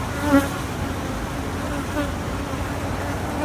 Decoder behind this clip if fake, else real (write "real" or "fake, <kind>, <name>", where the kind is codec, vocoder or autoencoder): real